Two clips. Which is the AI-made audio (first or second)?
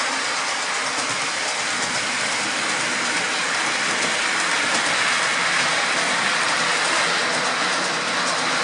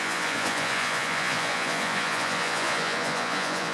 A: second